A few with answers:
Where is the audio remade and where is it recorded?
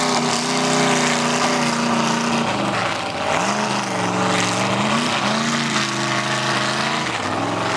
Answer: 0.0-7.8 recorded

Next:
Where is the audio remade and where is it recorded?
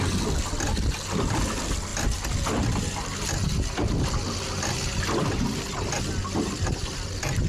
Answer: 0.0-7.5 recorded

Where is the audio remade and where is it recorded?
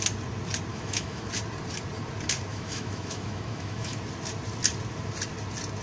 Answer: 0.0-0.7 recorded; 0.7-1.3 remade; 1.3-2.5 recorded; 2.5-4.0 remade; 4.0-5.8 recorded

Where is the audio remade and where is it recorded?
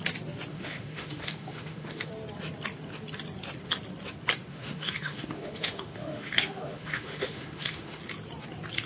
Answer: 0.0-0.5 recorded; 0.5-2.1 remade; 2.1-4.5 recorded; 4.5-8.0 remade; 8.0-8.9 recorded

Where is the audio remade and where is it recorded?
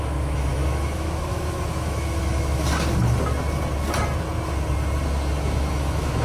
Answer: 0.0-2.6 remade; 2.6-5.4 recorded; 5.4-6.2 remade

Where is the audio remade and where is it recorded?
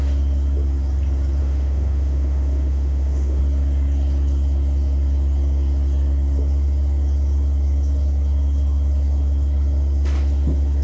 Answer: 0.0-1.4 recorded; 1.4-3.4 remade; 3.4-10.8 recorded